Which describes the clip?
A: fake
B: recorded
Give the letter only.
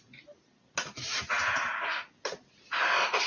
B